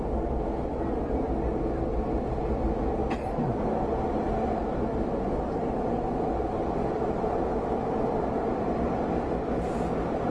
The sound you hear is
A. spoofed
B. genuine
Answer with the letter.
B